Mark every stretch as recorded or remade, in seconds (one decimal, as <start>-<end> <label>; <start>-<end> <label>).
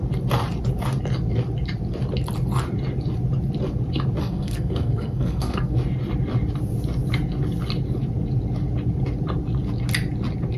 0.0-4.2 recorded; 4.2-5.8 remade; 5.8-10.6 recorded